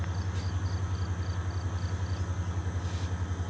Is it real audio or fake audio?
real